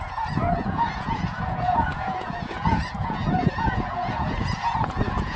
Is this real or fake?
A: fake